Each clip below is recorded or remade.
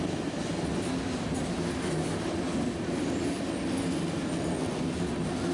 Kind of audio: recorded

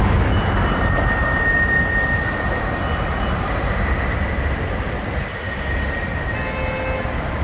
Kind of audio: recorded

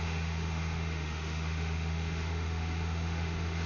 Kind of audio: remade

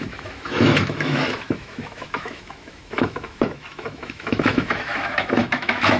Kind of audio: remade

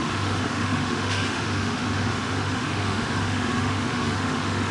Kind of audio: remade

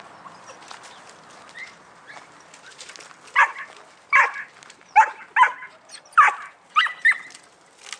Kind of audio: recorded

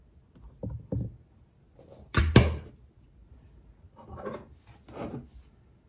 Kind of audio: recorded